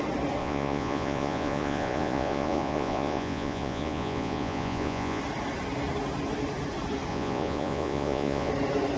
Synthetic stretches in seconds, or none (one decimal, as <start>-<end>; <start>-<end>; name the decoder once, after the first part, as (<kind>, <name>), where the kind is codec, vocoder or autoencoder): 0.4-5.2 (vocoder, Vocos); 7.1-8.5